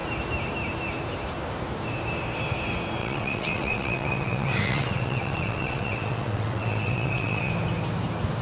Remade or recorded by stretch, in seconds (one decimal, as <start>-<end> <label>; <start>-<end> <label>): 0.0-3.0 recorded; 3.0-7.5 remade; 7.5-8.4 recorded